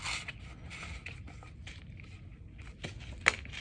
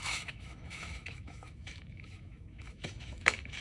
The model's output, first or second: second